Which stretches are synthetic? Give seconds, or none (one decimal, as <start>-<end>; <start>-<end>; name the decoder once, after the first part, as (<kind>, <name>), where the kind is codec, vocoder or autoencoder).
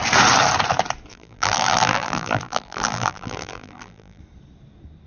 1.1-4.2 (vocoder, BigVGAN v2)